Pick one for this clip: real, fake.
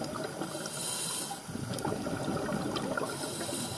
real